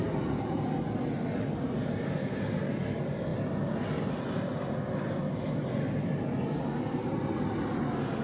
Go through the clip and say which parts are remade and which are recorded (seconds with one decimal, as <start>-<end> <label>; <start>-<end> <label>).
0.0-8.2 recorded